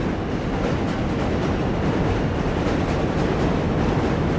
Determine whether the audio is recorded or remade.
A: recorded